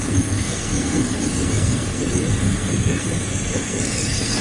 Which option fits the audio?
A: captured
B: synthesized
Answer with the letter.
B